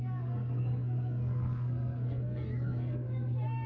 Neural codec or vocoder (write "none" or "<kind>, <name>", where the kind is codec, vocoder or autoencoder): codec, SNAC